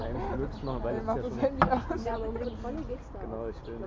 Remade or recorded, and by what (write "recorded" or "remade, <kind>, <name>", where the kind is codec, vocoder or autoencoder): recorded